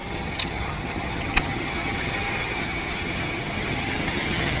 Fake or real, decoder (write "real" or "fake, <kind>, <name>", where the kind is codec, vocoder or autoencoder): fake, vocoder, HiFi-GAN